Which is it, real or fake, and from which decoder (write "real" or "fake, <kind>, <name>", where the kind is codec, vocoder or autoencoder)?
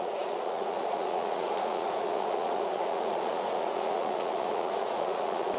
fake, vocoder, Vocos